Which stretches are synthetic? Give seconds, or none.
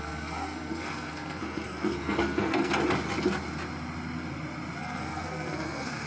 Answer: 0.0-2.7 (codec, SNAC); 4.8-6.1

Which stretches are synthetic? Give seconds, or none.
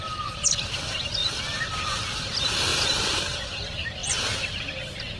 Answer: none